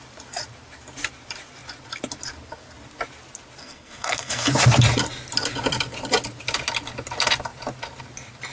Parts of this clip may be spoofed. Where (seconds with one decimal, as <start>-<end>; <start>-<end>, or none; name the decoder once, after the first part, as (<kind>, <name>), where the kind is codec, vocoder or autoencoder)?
3.6-4.5 (codec, SNAC)

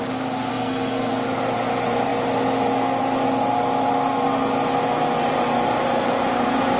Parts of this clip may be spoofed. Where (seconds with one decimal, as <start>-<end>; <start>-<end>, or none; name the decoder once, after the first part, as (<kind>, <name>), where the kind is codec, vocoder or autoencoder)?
0.5-1.1 (codec, SNAC)

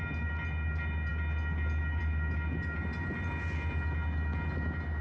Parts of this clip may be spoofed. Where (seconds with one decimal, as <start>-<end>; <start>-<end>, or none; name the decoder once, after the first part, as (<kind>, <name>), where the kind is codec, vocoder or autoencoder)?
none

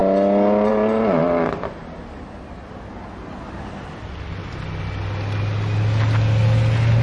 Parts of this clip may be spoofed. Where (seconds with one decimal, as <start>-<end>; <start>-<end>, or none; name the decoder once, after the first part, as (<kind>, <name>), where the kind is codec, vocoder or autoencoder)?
none

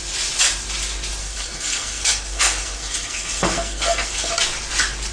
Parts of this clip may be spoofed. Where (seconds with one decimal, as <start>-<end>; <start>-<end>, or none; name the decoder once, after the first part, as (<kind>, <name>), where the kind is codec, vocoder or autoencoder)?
1.2-4.3 (codec, SNAC)

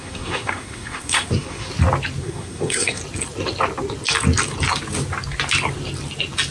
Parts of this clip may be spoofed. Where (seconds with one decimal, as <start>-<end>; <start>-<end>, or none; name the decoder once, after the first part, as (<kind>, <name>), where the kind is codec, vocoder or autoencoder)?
0.0-1.7 (codec, SNAC); 2.2-3.0

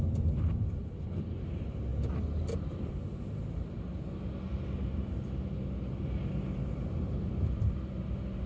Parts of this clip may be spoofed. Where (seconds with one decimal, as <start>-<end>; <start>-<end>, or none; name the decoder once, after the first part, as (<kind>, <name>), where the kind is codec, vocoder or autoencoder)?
none

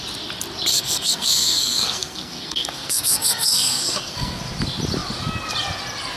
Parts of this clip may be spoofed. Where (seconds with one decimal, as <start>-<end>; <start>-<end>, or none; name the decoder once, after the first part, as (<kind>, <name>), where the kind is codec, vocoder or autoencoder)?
0.7-4.4 (codec, SNAC)